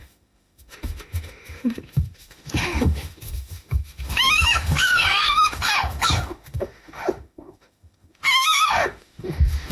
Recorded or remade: remade